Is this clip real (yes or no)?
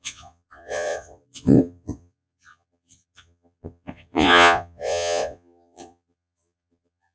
no